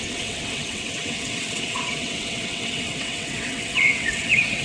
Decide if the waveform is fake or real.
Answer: fake